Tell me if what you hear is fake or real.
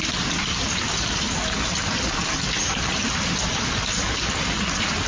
real